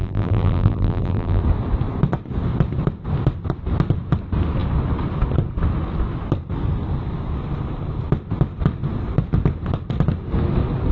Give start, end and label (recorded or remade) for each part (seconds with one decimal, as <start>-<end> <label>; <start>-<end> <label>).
0.0-1.4 remade; 1.4-10.9 recorded